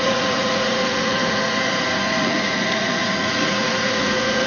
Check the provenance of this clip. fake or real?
fake